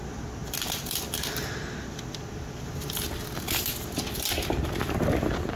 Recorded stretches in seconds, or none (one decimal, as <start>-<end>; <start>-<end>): 0.0-5.6